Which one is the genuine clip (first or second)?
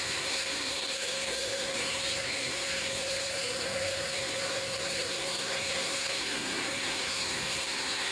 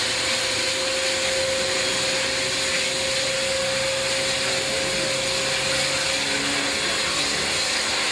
second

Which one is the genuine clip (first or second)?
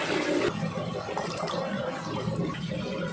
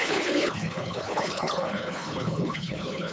first